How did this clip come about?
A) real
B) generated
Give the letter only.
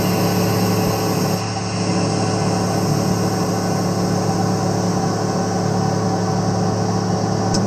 A